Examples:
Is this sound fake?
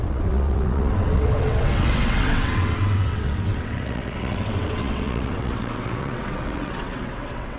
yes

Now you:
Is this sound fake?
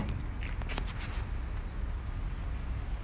no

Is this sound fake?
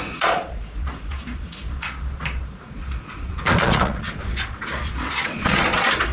yes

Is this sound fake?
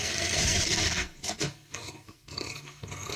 yes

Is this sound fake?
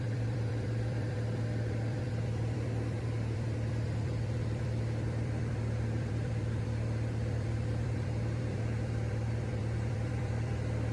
yes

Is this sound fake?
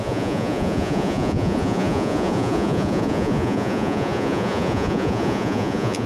yes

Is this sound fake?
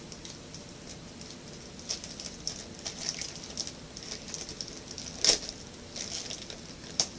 no